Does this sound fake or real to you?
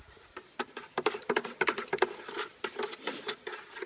real